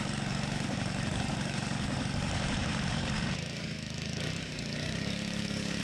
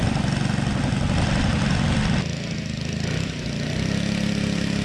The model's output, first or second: first